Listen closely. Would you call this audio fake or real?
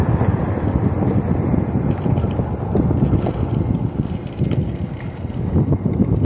real